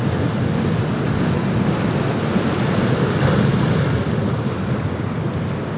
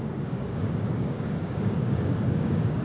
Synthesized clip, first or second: second